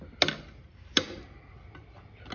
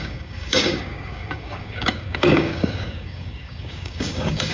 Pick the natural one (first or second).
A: first